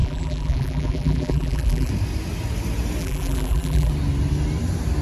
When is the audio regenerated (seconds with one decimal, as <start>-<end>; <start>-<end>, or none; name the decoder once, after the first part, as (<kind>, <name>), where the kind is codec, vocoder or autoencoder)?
0.0-1.9 (vocoder, BigVGAN v2); 3.0-3.9